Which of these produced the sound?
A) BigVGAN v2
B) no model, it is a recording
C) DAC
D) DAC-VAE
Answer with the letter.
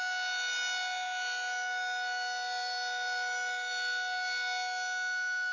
B